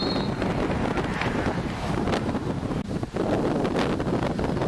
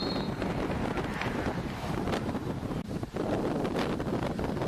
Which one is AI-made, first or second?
second